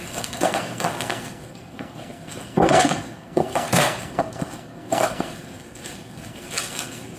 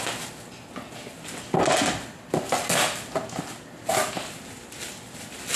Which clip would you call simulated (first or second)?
first